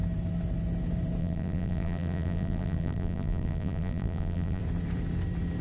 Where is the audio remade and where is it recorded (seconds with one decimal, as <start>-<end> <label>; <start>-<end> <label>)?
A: 0.0-1.2 recorded; 1.2-4.6 remade; 4.6-5.6 recorded